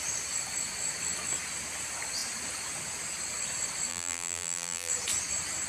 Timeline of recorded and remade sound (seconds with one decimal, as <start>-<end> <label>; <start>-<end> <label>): 0.0-3.9 recorded; 3.9-4.9 remade; 4.9-5.7 recorded